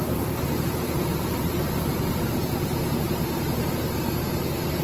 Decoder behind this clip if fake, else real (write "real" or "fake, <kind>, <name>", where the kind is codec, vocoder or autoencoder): fake, vocoder, BigVGAN v2